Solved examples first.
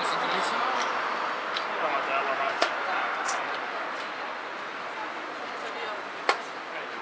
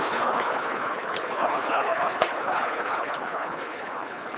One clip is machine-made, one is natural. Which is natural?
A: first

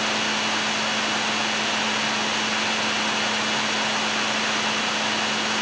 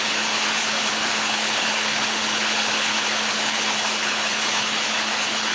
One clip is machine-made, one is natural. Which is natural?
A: first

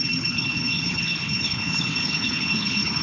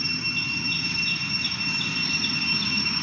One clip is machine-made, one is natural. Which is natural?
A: second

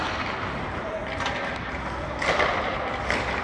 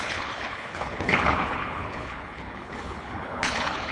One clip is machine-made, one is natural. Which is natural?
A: first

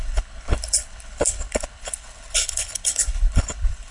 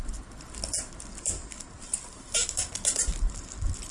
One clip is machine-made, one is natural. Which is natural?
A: second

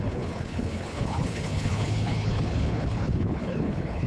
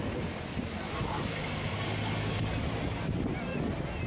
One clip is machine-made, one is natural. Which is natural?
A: second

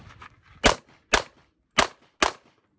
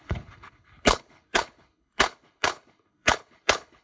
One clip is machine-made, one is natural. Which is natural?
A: first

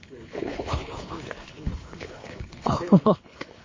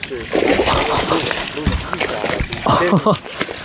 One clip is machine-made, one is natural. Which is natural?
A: second